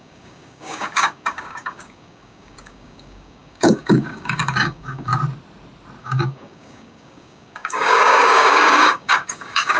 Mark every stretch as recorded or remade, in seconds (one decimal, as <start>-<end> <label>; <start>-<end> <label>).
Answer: 0.0-5.1 remade; 5.1-6.0 recorded; 6.0-9.8 remade